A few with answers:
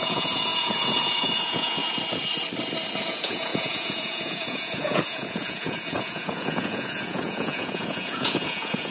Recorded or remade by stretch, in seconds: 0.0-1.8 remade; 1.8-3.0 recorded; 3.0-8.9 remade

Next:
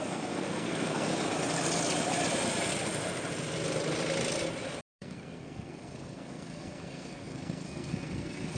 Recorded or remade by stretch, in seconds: 0.0-1.1 remade; 1.1-4.8 recorded; 4.8-8.6 remade

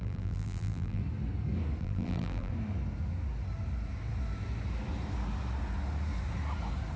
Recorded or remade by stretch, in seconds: 0.0-1.0 remade; 1.0-1.8 recorded; 1.8-2.5 remade; 2.5-7.0 recorded

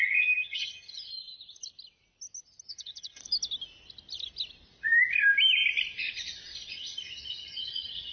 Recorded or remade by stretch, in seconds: 0.0-1.1 remade; 1.1-2.7 recorded; 2.7-3.2 remade; 3.2-6.7 recorded; 6.7-8.1 remade

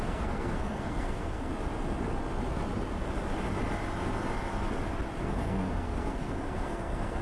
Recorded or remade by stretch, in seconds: 0.0-1.5 remade; 1.5-5.2 recorded; 5.2-7.2 remade

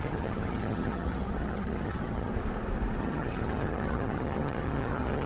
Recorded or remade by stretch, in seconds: 0.0-2.3 remade; 2.3-3.0 recorded; 3.0-5.3 remade